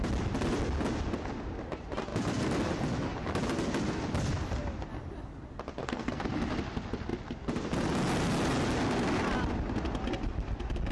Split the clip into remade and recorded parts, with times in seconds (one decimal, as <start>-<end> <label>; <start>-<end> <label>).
0.0-5.8 recorded; 5.8-6.3 remade; 6.3-10.9 recorded